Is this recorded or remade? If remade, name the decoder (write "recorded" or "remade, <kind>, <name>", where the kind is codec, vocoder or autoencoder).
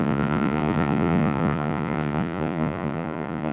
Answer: remade, vocoder, Vocos